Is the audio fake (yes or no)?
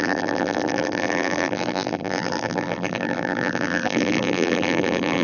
yes